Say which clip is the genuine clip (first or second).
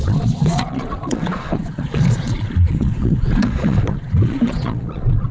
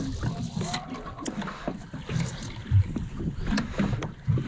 second